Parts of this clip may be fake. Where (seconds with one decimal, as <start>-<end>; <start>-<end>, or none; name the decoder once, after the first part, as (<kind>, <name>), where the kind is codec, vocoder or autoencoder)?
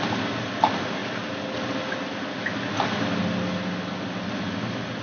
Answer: none